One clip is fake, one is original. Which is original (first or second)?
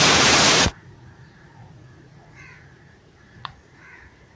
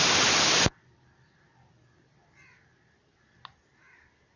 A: second